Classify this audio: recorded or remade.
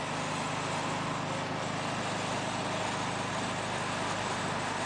recorded